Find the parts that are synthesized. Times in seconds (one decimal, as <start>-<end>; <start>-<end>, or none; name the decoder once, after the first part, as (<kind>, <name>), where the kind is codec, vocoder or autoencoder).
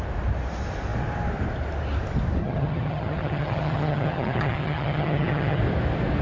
2.4-5.6 (vocoder, HiFi-GAN)